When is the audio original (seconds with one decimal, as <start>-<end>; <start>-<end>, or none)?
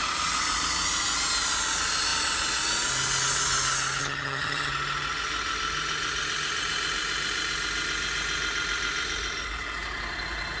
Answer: 0.0-4.0; 4.7-10.6